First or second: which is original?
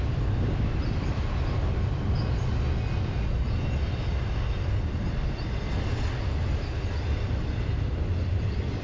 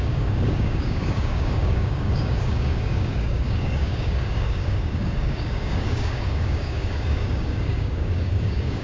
first